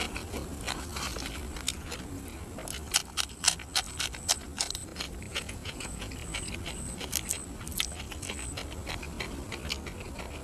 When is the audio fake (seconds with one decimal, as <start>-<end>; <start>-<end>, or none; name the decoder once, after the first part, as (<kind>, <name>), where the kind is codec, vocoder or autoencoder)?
5.3-6.1 (vocoder, Vocos)